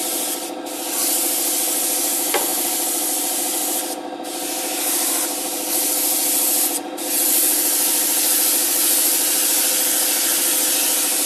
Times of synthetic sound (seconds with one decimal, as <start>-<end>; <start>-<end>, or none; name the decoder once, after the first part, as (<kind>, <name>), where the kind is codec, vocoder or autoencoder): 2.5-7.0 (vocoder, BigVGAN v2)